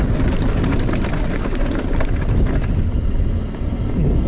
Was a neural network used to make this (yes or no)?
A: no